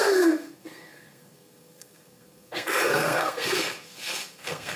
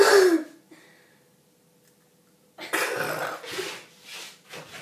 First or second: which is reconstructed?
first